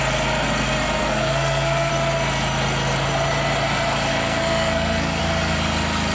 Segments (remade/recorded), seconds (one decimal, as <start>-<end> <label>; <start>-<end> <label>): 0.0-1.0 recorded; 1.0-1.9 remade; 1.9-4.1 recorded; 4.1-5.2 remade; 5.2-6.1 recorded